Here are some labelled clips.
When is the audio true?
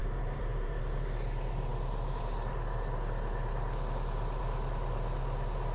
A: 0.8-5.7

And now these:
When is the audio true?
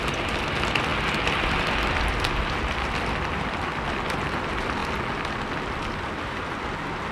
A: 0.0-7.1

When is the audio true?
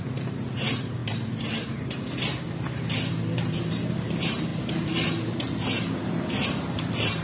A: 2.3-3.1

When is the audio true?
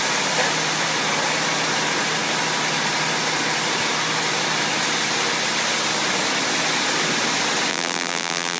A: 0.0-7.7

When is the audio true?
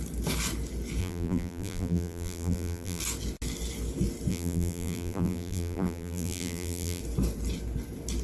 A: 0.0-1.0; 3.0-4.3; 7.0-8.2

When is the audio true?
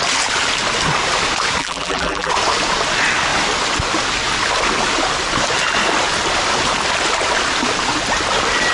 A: 0.0-1.6; 2.3-8.7